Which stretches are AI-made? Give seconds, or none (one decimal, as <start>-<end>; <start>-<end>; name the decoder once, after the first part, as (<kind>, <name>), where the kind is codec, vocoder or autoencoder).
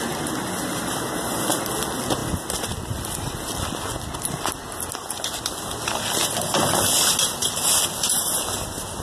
none